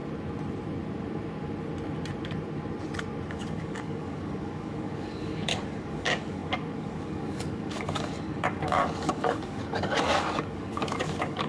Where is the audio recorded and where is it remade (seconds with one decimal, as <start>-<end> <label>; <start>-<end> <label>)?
0.0-3.3 recorded; 3.3-11.5 remade